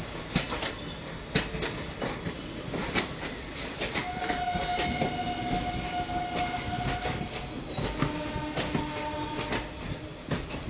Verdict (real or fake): real